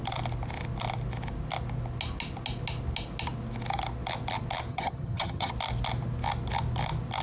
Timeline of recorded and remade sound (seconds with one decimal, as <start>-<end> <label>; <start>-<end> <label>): 0.0-4.7 recorded; 4.7-5.5 remade; 5.5-7.2 recorded